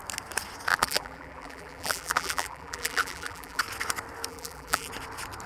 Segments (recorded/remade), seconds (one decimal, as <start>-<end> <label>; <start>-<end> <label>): 0.0-0.7 recorded; 0.7-3.6 remade; 3.6-4.3 recorded; 4.3-4.9 remade; 4.9-5.5 recorded